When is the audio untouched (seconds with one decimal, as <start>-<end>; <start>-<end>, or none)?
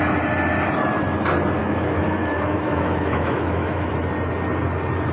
0.0-1.6; 3.9-5.1